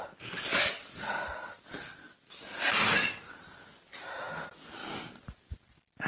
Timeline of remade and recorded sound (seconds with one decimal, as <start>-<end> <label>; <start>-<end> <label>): 0.0-0.5 remade; 0.5-3.9 recorded; 3.9-4.8 remade; 4.8-6.1 recorded